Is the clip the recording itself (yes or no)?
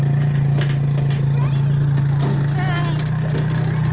yes